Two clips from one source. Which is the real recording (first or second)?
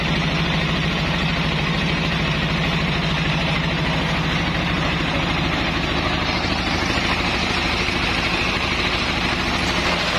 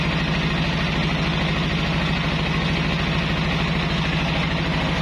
second